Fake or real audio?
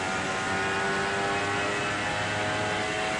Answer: real